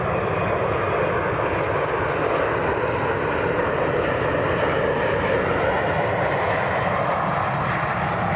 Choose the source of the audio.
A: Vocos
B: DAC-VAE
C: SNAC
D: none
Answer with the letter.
D